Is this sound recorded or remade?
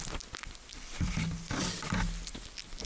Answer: recorded